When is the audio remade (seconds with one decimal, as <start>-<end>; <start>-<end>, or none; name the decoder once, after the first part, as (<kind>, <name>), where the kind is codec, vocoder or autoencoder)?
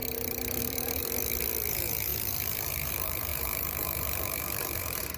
0.6-1.0 (vocoder, BigVGAN v2); 1.7-5.2